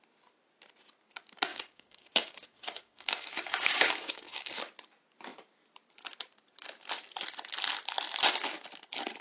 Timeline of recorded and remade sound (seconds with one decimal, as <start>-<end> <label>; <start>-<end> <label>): 0.0-1.5 recorded; 1.5-4.6 remade; 4.6-9.2 recorded